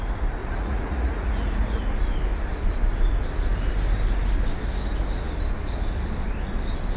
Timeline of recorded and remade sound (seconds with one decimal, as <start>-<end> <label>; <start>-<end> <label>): 0.0-0.4 recorded; 0.4-1.8 remade; 1.8-7.0 recorded